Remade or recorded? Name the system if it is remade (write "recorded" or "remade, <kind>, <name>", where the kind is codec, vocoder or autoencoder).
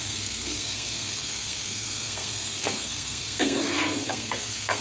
remade, codec, SNAC